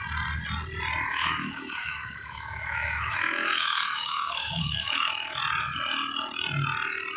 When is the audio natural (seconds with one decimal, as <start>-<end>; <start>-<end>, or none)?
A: 0.0-1.1; 5.4-7.2